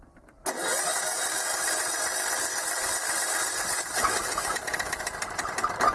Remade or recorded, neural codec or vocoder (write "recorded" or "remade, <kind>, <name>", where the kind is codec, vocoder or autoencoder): recorded